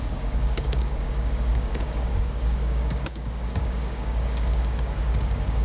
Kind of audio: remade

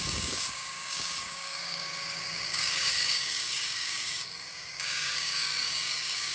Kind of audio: remade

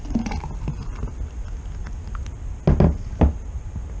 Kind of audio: recorded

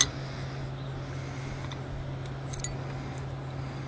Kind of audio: recorded